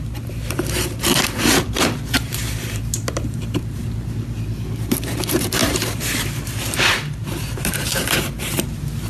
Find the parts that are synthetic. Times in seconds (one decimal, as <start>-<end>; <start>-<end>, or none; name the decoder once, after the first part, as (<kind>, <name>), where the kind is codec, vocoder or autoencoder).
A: 0.0-9.1 (vocoder, BigVGAN v2)